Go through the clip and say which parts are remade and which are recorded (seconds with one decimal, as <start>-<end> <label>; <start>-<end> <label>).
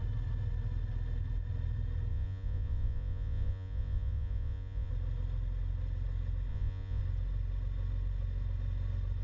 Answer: 0.0-2.1 recorded; 2.1-4.9 remade; 4.9-6.5 recorded; 6.5-7.0 remade; 7.0-9.2 recorded